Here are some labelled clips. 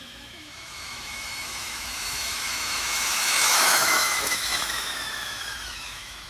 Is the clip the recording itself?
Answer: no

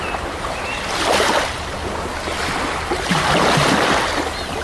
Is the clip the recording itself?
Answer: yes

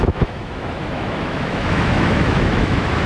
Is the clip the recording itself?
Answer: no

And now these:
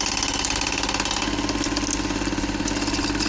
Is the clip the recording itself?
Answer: yes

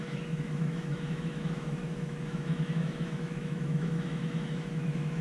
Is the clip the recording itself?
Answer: no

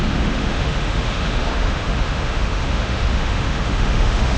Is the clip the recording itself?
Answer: no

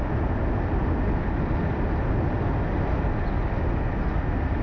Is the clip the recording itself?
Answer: yes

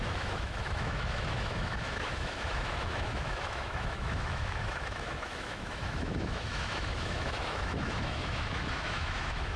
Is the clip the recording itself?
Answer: no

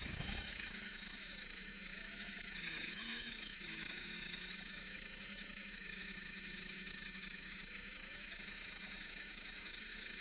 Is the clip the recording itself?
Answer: no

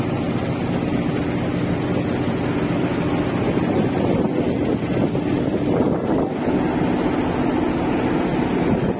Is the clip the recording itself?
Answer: yes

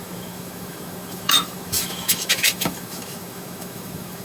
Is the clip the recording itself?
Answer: no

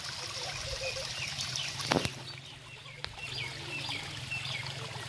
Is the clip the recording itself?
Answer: yes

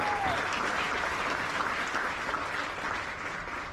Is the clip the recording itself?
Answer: yes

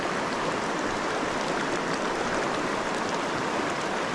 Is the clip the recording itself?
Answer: yes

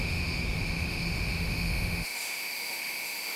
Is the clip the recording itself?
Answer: no